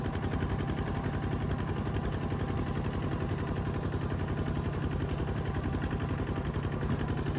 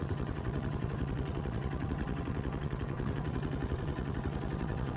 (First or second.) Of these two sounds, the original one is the first